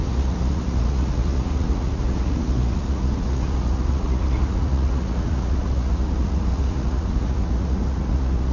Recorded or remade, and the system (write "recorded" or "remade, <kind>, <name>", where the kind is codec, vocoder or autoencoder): remade, vocoder, Vocos